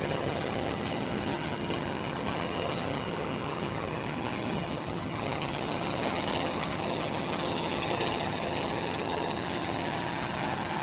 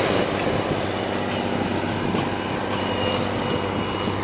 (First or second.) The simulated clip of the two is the first